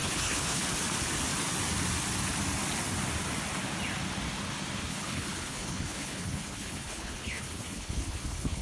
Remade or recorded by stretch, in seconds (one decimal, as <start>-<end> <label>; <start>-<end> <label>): 0.0-0.7 remade; 0.7-4.9 recorded; 4.9-8.6 remade